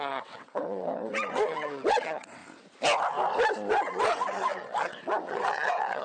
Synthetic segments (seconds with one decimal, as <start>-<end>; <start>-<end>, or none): 0.0-2.4; 3.7-6.0